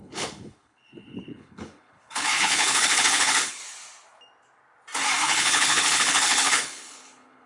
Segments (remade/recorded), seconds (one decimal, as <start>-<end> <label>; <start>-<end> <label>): 0.0-3.6 remade; 3.6-5.2 recorded; 5.2-7.5 remade